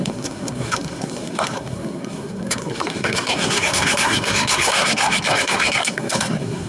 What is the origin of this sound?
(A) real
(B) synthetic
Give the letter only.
B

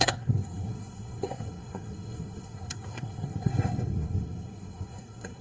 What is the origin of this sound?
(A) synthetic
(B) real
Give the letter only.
A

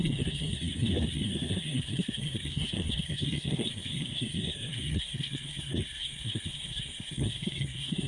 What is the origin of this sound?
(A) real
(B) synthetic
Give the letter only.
B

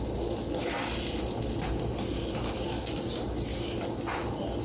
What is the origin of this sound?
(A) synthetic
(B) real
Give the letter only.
B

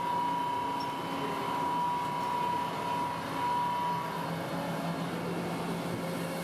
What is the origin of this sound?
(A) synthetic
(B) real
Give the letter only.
B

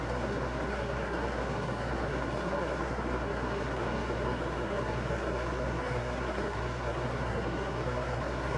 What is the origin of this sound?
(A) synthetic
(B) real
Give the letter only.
A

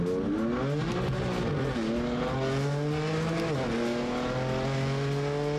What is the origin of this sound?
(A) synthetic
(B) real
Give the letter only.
B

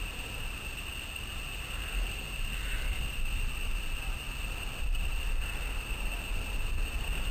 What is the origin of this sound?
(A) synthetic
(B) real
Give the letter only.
B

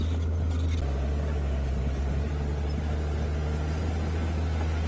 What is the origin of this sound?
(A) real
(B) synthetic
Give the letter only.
A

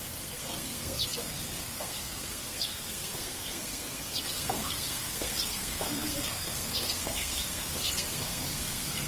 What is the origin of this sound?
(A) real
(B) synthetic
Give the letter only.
B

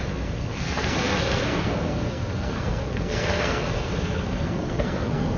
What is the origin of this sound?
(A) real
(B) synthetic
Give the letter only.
B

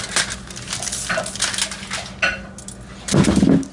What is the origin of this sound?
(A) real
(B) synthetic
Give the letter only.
A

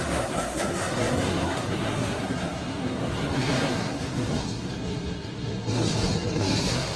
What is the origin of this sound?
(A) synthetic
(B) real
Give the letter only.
A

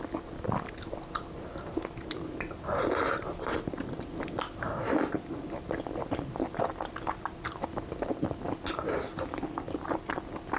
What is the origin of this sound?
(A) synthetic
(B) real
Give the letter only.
B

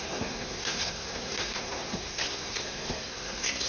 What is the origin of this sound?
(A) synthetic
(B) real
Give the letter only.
A